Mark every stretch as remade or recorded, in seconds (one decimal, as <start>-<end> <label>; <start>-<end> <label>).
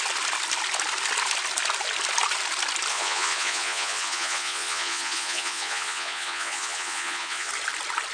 0.0-2.9 recorded; 2.9-7.5 remade; 7.5-8.1 recorded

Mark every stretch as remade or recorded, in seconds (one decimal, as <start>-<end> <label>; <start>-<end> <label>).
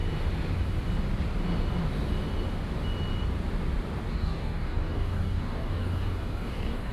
0.0-4.1 recorded; 4.1-6.9 remade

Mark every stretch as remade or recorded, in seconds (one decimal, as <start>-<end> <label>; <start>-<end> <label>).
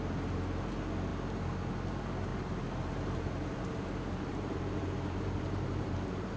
0.0-2.3 recorded; 2.3-6.4 remade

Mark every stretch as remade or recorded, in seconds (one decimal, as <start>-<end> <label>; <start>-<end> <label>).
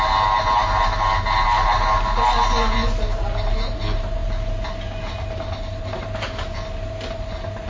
0.0-7.7 recorded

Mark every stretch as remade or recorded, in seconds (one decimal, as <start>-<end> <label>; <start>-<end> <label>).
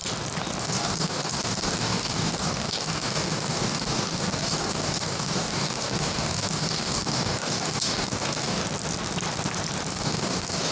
0.0-0.6 recorded; 0.6-8.6 remade; 8.6-9.9 recorded; 9.9-10.7 remade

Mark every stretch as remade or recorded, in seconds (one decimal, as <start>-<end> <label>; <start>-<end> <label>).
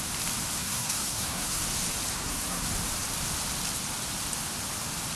0.0-0.6 recorded; 0.6-1.6 remade; 1.6-2.1 recorded; 2.1-2.7 remade; 2.7-5.2 recorded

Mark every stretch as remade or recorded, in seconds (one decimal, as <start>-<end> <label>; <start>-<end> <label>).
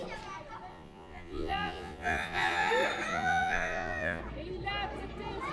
0.0-0.7 recorded; 0.7-2.7 remade; 2.7-3.1 recorded; 3.1-4.2 remade; 4.2-5.5 recorded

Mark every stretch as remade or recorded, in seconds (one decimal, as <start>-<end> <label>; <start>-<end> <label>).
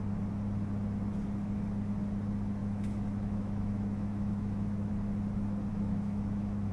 0.0-2.6 recorded; 2.6-4.9 remade; 4.9-5.7 recorded; 5.7-6.7 remade